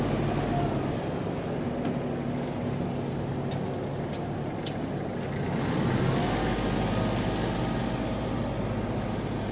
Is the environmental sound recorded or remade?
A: recorded